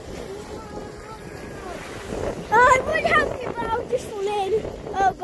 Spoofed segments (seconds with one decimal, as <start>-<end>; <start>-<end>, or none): none